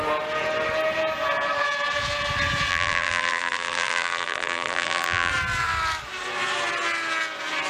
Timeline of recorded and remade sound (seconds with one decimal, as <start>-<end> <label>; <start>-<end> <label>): 0.0-2.7 recorded; 2.7-5.3 remade; 5.3-7.7 recorded